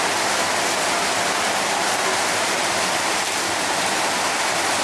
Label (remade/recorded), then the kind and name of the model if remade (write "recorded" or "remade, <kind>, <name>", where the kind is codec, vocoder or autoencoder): recorded